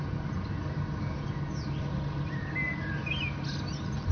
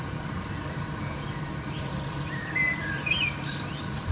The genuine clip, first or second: first